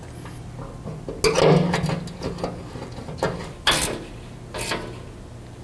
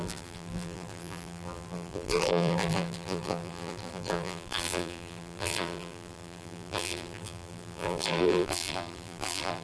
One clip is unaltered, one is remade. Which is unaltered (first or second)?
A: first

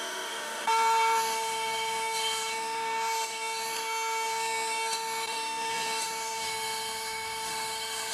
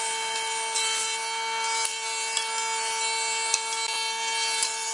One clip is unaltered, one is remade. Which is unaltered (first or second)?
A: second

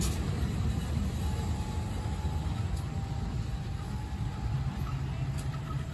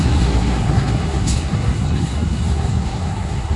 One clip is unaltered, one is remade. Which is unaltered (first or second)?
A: first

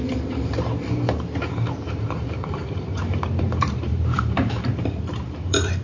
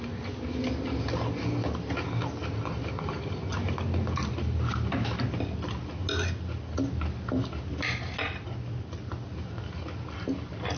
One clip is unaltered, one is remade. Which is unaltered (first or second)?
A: second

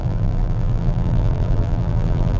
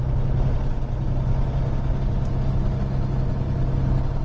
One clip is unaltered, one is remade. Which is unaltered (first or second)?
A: second